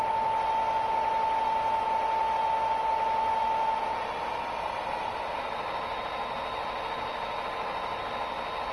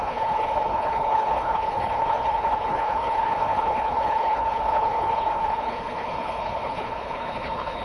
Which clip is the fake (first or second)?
second